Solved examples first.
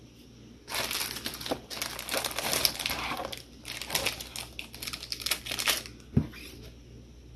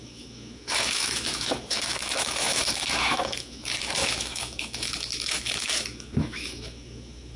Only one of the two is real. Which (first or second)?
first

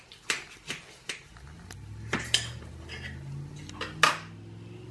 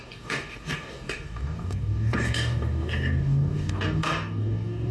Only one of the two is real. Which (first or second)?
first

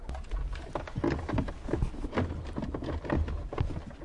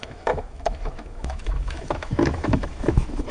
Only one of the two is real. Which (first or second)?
first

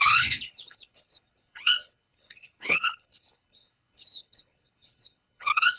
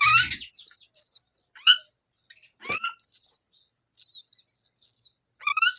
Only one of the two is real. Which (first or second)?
second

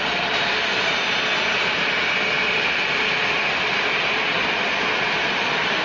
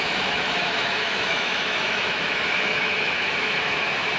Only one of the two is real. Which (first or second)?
first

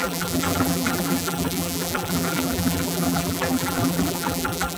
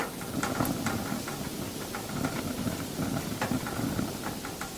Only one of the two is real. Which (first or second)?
second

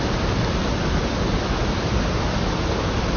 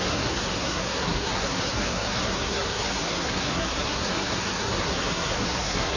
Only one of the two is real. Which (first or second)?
first